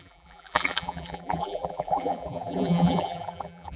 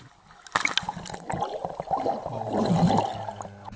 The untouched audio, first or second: second